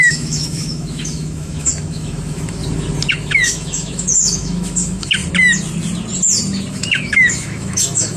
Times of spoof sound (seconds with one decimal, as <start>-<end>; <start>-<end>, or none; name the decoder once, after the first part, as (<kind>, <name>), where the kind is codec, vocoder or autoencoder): 0.0-2.6 (autoencoder, DAC-VAE); 3.1-5.2; 6.7-8.2